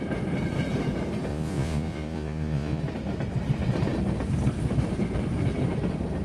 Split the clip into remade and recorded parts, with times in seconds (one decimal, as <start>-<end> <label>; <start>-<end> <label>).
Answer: 0.0-1.3 recorded; 1.3-2.8 remade; 2.8-6.2 recorded